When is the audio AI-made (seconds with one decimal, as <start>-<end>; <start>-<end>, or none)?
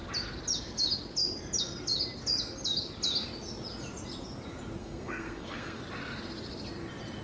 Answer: 4.8-5.8